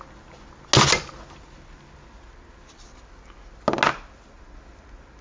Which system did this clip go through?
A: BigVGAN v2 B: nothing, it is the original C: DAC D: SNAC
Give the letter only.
B